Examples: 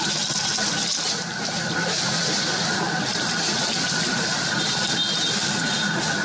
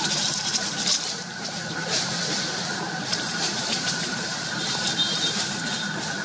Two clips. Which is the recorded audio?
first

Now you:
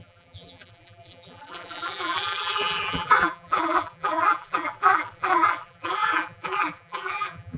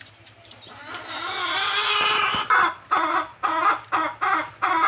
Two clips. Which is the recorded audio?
second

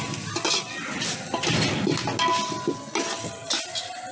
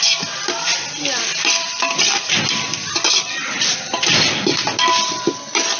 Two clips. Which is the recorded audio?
first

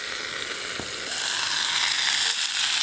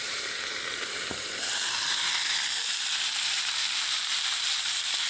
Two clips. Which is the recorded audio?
first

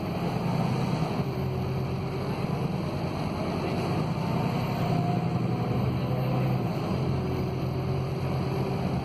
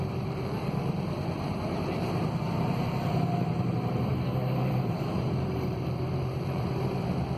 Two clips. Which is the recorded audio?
first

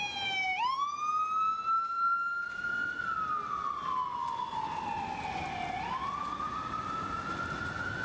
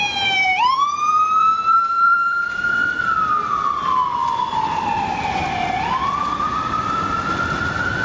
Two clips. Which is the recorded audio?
first